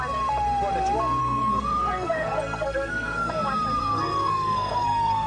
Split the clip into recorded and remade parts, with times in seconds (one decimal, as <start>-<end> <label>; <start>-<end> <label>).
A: 0.0-1.2 recorded; 1.2-3.3 remade; 3.3-3.8 recorded; 3.8-5.3 remade